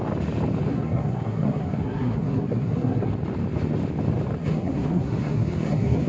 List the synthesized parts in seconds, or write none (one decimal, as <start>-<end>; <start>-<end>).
0.7-3.1; 4.4-6.1